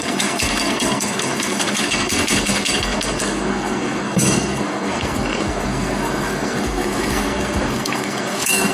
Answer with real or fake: fake